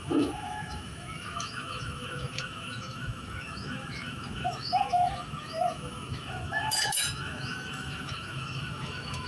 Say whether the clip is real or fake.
fake